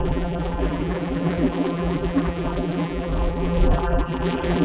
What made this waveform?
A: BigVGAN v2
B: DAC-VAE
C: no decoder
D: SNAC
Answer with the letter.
A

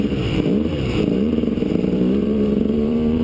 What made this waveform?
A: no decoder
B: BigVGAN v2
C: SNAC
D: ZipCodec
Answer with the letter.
B